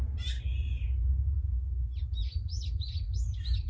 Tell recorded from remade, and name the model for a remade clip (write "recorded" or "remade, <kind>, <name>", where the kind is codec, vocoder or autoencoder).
remade, vocoder, BigVGAN v2